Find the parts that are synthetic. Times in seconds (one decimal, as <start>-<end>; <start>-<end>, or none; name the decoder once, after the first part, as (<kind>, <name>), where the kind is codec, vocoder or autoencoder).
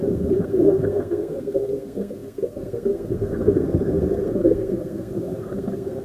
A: 0.0-6.0 (codec, SNAC)